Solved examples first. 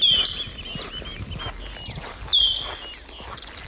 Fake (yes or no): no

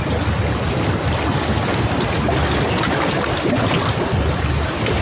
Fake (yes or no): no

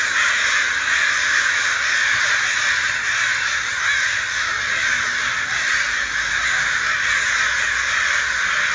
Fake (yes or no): no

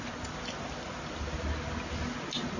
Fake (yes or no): no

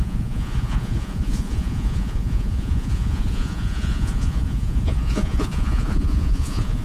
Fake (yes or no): yes